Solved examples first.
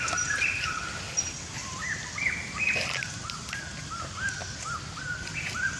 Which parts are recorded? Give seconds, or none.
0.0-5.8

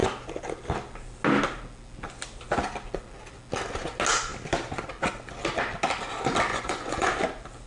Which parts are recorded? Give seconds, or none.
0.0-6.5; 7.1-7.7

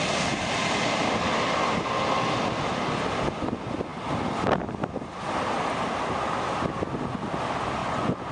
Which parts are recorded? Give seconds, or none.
0.0-7.8